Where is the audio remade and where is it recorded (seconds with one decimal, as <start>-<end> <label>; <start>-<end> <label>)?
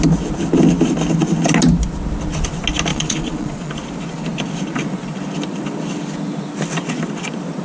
0.0-2.9 recorded; 2.9-3.7 remade; 3.7-7.6 recorded